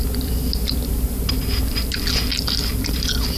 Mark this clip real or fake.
real